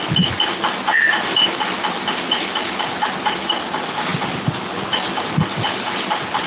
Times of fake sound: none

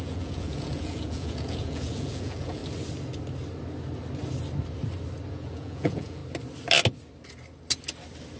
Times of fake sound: 0.0-2.6 (vocoder, Vocos); 5.3-6.2